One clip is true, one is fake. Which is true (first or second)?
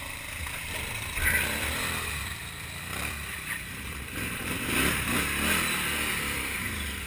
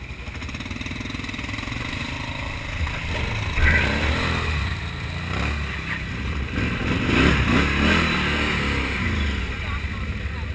second